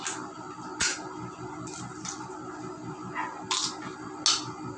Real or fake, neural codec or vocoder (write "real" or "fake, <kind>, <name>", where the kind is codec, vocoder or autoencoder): real